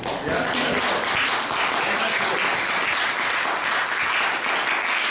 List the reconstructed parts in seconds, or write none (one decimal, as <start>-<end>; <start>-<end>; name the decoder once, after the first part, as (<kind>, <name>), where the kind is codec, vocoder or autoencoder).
none